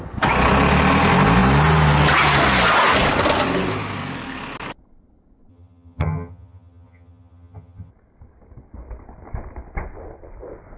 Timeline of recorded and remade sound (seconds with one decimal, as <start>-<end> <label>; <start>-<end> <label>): 0.0-5.5 recorded; 5.5-7.9 remade; 7.9-10.8 recorded